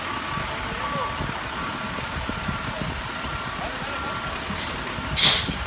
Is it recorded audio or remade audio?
recorded